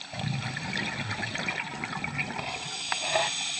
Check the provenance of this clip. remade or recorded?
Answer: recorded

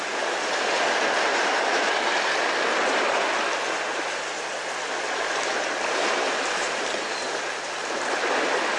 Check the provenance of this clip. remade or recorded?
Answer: recorded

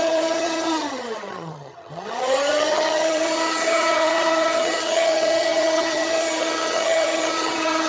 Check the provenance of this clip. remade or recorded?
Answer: remade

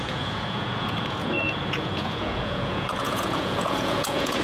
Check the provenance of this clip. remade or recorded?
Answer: remade